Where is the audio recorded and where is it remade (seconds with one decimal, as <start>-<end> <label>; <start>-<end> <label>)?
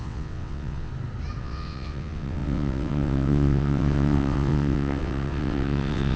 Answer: 0.0-0.9 remade; 0.9-1.4 recorded; 1.4-6.2 remade